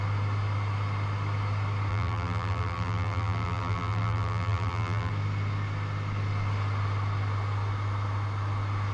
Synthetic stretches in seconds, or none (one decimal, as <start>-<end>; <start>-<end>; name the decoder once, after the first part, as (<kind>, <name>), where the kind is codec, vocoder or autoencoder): 1.9-5.1 (vocoder, BigVGAN v2)